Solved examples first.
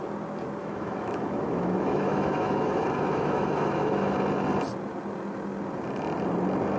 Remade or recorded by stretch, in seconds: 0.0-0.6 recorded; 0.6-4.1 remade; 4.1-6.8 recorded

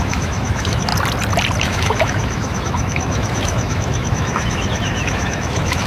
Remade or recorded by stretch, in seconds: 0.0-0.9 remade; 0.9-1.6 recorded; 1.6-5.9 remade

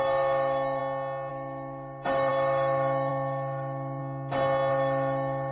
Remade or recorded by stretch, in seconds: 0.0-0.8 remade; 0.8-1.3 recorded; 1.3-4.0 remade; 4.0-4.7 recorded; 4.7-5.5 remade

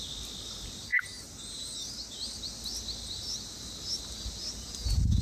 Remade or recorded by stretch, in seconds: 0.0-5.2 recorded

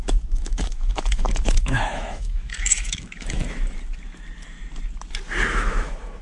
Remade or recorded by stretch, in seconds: 0.0-3.4 remade; 3.4-5.5 recorded; 5.5-6.2 remade

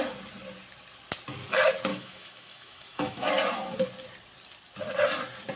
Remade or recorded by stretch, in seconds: 0.0-1.9 recorded; 1.9-3.3 remade; 3.3-5.6 recorded